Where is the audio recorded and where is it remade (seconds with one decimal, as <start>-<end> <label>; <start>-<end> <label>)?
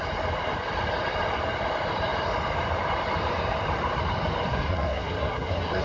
0.0-4.5 recorded; 4.5-5.8 remade